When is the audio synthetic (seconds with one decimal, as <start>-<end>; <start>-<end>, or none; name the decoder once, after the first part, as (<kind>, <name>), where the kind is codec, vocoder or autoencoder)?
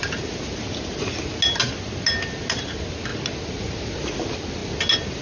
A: none